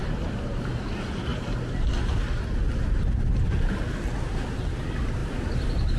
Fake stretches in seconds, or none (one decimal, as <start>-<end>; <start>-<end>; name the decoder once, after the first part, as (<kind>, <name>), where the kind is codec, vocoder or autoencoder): 0.0-0.9 (vocoder, BigVGAN v2); 1.3-1.9